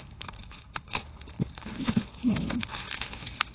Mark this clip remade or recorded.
remade